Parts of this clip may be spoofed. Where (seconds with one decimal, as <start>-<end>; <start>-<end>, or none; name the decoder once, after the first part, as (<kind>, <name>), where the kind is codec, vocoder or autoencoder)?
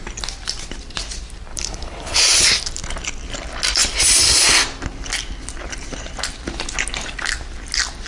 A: 1.5-2.2 (codec, HILCodec)